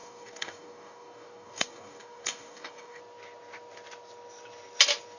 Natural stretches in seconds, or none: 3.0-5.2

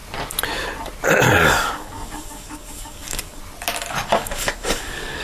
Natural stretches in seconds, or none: 0.0-1.3; 3.4-3.9

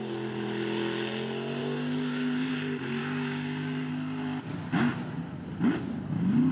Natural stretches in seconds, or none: 0.0-1.6; 2.5-3.0; 3.9-6.5

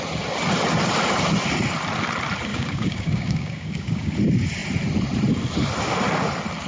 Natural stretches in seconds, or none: 0.0-2.5; 4.1-6.7